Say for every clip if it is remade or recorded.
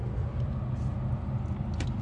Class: recorded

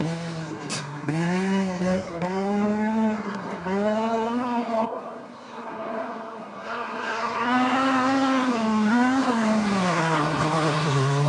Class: remade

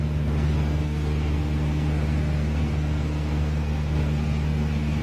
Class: remade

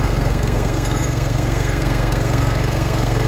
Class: remade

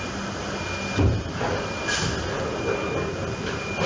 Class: recorded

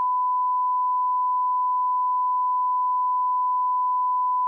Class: recorded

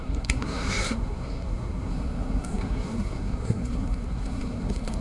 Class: remade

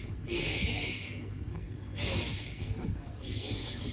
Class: remade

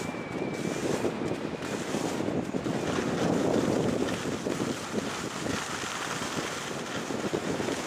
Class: recorded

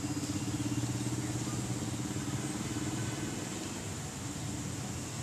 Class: recorded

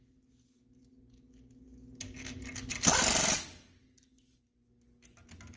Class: recorded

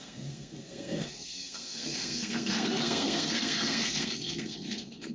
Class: remade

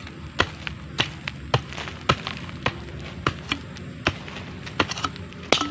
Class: recorded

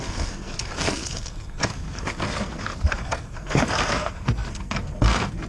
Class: remade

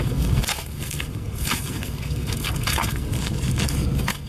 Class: remade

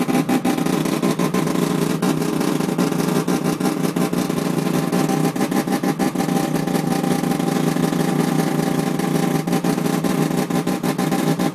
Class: recorded